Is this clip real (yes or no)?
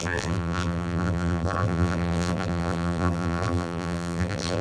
no